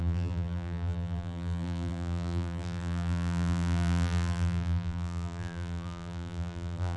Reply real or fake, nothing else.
fake